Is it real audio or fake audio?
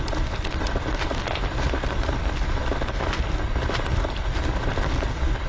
real